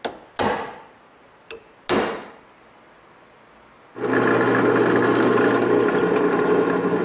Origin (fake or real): real